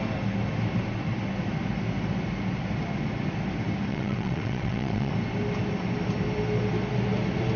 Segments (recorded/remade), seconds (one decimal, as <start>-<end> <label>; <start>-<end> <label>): 0.0-3.9 recorded; 3.9-5.1 remade; 5.1-7.6 recorded